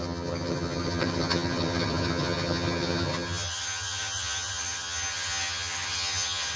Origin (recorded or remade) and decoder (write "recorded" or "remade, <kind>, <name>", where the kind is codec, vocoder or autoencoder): remade, vocoder, HiFi-GAN